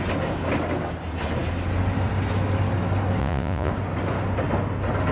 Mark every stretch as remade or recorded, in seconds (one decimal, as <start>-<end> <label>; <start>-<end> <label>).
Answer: 0.0-3.2 recorded; 3.2-3.7 remade; 3.7-5.1 recorded